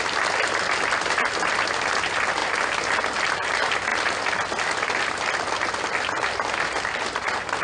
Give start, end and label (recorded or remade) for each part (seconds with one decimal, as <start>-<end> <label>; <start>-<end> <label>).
0.0-7.6 recorded